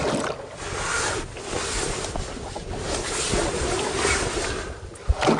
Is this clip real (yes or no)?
yes